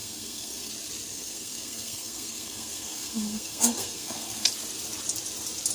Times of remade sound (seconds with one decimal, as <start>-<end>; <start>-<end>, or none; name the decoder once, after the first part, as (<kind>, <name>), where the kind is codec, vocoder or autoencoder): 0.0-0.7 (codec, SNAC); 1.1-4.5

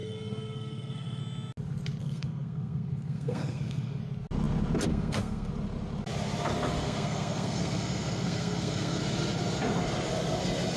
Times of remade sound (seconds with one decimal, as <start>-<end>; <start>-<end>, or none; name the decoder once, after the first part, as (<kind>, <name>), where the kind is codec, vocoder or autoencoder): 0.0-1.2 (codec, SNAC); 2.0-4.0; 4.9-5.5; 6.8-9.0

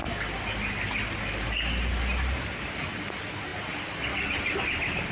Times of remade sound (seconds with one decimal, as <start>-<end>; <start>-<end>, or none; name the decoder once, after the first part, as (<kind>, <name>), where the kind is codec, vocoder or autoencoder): none

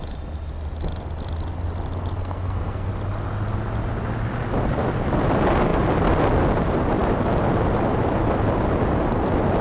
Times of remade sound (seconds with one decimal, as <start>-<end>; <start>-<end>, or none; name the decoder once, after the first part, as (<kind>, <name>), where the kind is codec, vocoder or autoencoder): 2.2-2.9 (codec, SNAC)

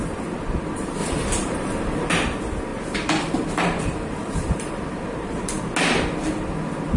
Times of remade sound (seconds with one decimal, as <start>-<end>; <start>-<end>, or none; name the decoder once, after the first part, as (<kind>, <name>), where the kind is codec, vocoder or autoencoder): 1.0-2.1 (vocoder, BigVGAN v2); 2.7-5.6